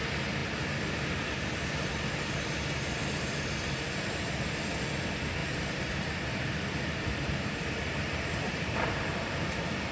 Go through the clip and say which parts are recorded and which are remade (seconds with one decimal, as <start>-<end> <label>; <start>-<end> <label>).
0.0-5.4 recorded; 5.4-9.9 remade